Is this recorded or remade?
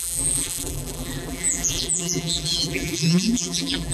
remade